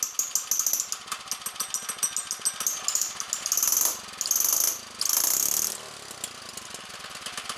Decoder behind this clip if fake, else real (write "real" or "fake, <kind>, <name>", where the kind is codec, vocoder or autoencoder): real